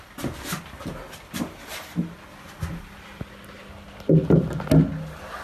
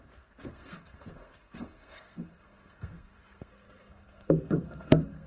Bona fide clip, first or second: first